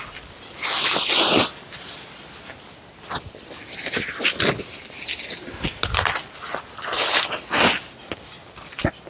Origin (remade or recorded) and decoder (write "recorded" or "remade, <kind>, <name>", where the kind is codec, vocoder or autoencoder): recorded